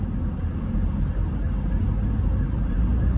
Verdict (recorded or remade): recorded